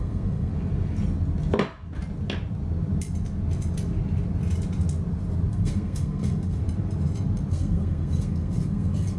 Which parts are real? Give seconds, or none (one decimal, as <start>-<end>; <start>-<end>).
0.5-5.5; 6.6-7.5